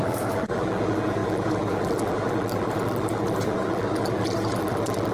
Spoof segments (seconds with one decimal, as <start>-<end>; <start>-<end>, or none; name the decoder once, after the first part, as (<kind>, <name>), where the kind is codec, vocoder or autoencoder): 0.0-5.1 (vocoder, BigVGAN v2)